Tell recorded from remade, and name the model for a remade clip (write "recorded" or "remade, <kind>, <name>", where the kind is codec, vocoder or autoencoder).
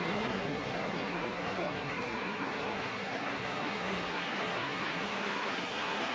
remade, codec, SNAC